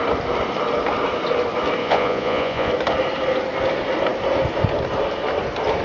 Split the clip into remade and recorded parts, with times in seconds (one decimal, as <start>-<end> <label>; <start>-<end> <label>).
0.0-1.8 recorded; 1.8-2.7 remade; 2.7-5.8 recorded